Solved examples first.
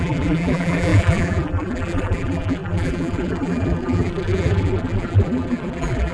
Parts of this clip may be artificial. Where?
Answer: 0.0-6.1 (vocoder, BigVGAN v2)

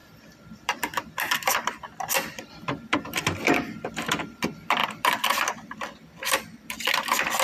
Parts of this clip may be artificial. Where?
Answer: 0.0-7.4 (vocoder, BigVGAN v2)

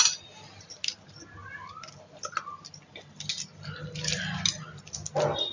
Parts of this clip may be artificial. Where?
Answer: none

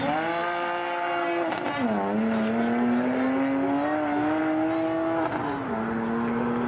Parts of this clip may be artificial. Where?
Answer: none

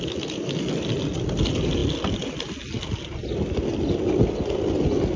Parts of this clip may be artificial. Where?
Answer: none